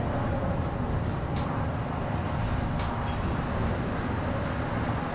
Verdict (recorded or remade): recorded